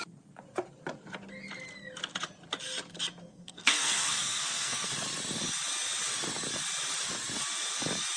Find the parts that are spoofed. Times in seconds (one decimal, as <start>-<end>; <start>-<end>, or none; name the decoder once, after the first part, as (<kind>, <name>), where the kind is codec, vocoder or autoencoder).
3.3-4.9 (codec, SNAC)